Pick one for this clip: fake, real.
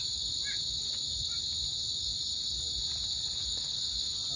real